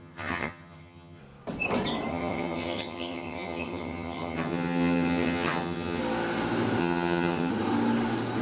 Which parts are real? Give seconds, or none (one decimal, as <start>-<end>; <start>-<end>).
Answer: 1.2-2.1; 6.0-6.8; 7.5-8.4